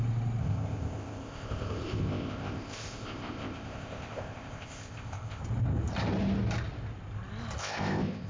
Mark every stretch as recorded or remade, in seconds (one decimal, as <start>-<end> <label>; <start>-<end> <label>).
0.0-0.4 recorded; 0.4-5.4 remade; 5.4-7.6 recorded; 7.6-8.3 remade